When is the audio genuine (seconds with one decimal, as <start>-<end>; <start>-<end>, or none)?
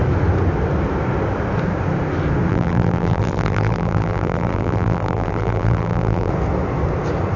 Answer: 0.0-2.5; 6.3-7.4